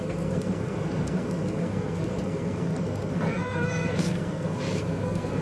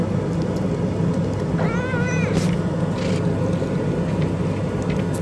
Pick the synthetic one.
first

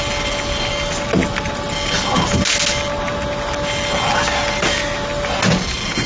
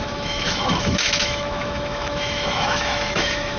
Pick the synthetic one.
second